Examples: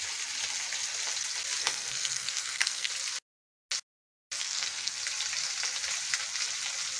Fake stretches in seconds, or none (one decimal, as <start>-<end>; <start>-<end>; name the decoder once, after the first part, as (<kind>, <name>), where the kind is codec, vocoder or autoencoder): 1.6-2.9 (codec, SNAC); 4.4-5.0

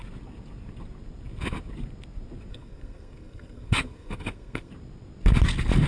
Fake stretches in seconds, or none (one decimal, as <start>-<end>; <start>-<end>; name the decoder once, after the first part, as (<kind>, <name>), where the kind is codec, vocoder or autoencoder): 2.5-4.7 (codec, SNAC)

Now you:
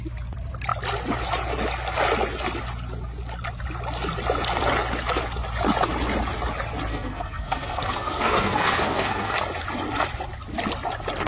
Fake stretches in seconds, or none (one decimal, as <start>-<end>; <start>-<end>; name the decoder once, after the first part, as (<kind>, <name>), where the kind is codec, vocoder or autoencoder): 6.9-9.3 (codec, SNAC)

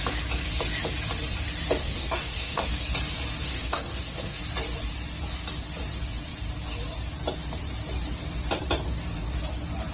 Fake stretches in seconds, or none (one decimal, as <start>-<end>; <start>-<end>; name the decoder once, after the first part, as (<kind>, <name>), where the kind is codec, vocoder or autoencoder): 1.8-2.7 (codec, SNAC); 3.4-4.4

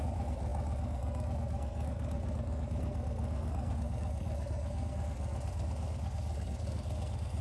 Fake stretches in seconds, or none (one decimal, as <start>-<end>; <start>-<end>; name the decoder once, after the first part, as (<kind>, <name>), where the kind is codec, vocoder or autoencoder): 0.0-7.4 (codec, SNAC)

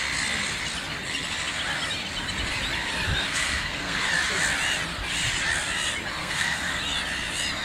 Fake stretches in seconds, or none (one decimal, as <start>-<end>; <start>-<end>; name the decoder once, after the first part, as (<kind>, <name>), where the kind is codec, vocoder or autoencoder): 3.2-4.1 (codec, SNAC); 6.2-6.8

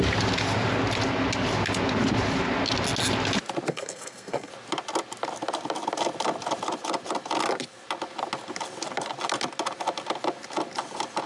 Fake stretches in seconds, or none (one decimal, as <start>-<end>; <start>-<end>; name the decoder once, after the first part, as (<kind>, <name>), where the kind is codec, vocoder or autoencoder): 3.7-4.5 (codec, SNAC)

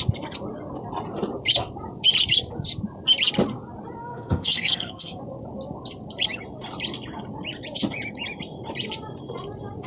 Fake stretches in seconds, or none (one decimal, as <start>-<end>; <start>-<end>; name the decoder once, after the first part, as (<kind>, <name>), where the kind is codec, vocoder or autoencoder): 4.0-5.2 (codec, SNAC)